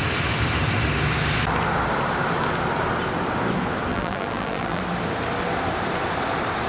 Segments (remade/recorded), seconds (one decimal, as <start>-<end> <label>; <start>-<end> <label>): 0.0-3.9 recorded; 3.9-4.8 remade; 4.8-6.7 recorded